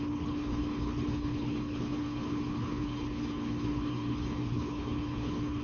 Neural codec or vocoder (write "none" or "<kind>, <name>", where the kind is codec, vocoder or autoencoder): codec, HILCodec